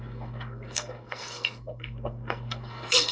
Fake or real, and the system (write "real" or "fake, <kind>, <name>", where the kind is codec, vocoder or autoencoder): fake, codec, SNAC